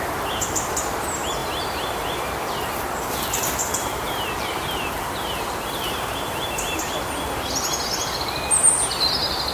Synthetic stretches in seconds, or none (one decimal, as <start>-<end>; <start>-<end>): 1.4-2.3; 3.6-7.4